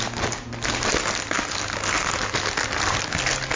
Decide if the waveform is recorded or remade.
recorded